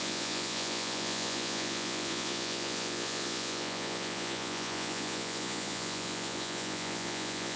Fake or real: fake